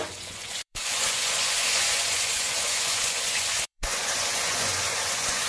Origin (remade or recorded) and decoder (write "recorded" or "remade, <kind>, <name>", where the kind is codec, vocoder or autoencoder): remade, vocoder, Vocos